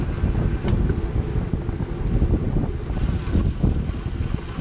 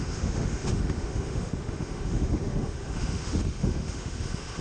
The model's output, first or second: second